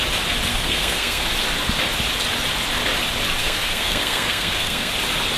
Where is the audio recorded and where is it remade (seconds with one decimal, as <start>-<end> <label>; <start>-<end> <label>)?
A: 0.0-0.5 recorded; 0.5-1.2 remade; 1.2-3.4 recorded; 3.4-4.9 remade; 4.9-5.4 recorded